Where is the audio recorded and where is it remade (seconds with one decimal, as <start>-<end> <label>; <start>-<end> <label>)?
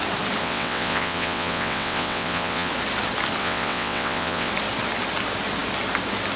0.0-0.4 recorded; 0.4-2.7 remade; 2.7-3.4 recorded; 3.4-4.5 remade; 4.5-6.4 recorded